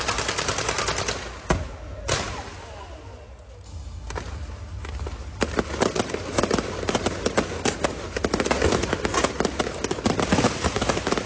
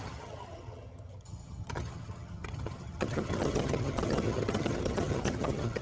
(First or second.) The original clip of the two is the first